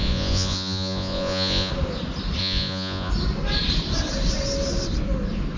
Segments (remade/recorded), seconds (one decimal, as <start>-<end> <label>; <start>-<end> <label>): 0.0-1.7 remade; 1.7-2.4 recorded; 2.4-3.1 remade; 3.1-5.6 recorded